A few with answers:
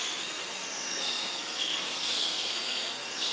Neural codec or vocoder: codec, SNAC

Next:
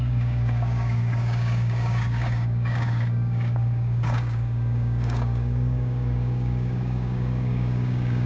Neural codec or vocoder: codec, DAC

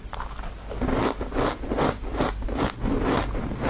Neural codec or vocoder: none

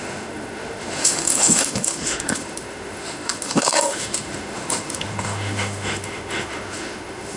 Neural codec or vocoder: autoencoder, DAC-VAE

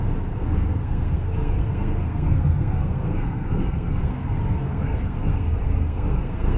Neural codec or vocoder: codec, SNAC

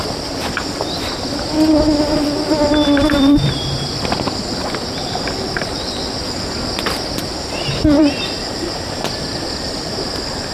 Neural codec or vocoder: none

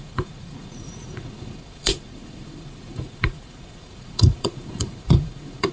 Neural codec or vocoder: vocoder, Vocos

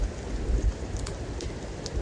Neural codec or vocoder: none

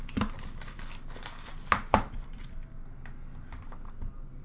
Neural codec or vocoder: none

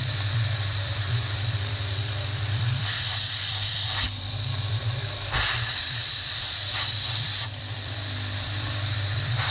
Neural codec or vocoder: vocoder, BigVGAN v2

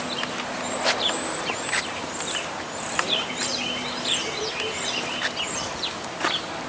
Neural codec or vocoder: none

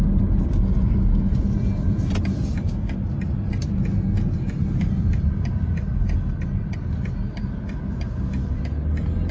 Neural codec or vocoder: none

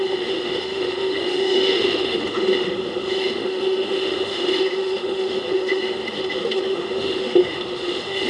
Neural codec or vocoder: autoencoder, DAC-VAE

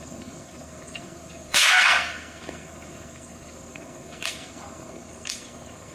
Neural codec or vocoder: codec, SNAC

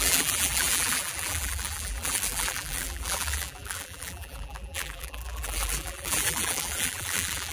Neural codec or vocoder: vocoder, BigVGAN v2